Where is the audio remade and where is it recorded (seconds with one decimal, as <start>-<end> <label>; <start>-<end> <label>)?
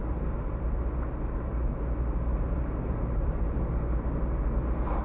0.0-1.5 remade; 1.5-2.3 recorded; 2.3-3.6 remade; 3.6-5.0 recorded